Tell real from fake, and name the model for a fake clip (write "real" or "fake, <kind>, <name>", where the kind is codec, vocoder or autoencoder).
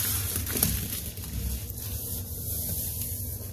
real